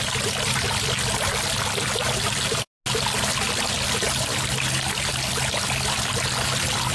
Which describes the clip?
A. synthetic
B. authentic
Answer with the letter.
B